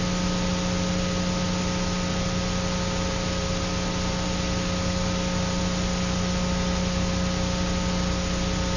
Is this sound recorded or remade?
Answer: recorded